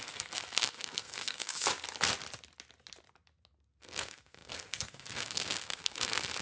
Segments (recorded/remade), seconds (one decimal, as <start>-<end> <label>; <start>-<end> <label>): 0.0-1.7 remade; 1.7-3.8 recorded; 3.8-6.4 remade